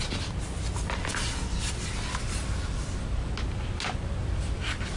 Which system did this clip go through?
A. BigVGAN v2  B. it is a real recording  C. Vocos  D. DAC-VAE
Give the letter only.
B